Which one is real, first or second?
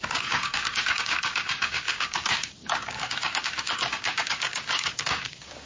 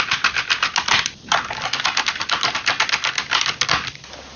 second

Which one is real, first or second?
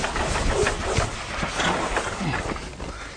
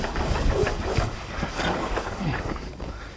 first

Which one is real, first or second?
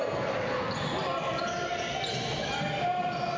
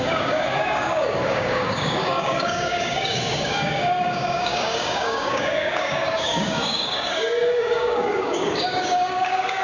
first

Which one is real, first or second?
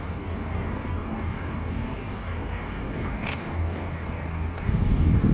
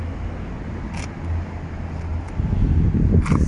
second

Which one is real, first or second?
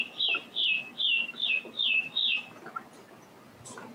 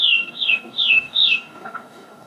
first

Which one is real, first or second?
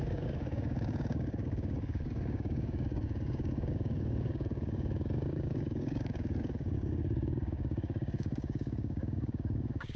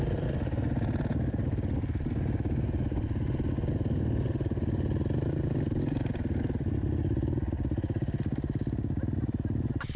second